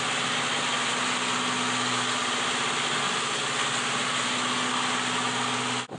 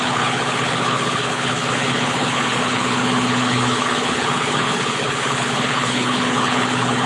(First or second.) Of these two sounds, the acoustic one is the first